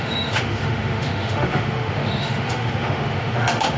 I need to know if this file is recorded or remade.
remade